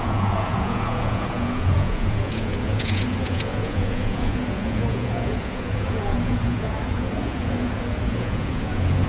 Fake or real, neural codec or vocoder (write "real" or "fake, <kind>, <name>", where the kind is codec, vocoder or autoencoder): fake, vocoder, Vocos